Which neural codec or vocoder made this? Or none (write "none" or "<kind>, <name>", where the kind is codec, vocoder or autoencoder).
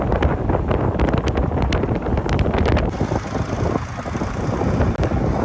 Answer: none